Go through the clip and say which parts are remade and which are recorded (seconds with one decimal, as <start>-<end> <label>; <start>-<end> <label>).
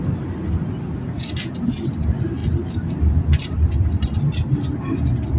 0.0-5.4 recorded